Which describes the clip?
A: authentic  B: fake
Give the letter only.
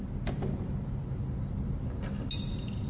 A